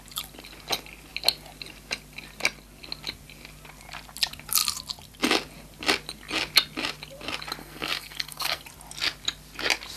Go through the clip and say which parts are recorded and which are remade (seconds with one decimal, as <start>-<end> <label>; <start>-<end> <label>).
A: 0.0-7.6 recorded; 7.6-8.6 remade; 8.6-10.0 recorded